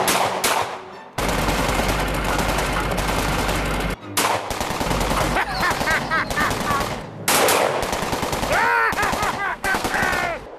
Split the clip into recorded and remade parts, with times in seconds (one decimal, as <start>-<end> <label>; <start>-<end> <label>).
0.0-9.5 recorded; 9.5-10.0 remade; 10.0-10.6 recorded